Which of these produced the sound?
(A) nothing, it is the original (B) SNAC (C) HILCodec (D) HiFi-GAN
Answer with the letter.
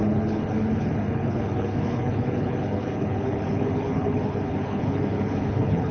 C